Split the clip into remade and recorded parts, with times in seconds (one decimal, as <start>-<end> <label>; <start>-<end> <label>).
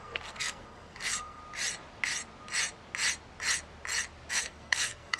0.0-1.4 remade; 1.4-4.3 recorded; 4.3-5.2 remade